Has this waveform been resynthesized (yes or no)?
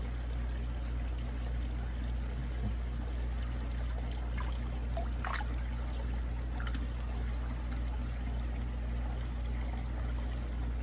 no